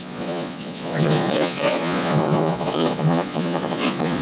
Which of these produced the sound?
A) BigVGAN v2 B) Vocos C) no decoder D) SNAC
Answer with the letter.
B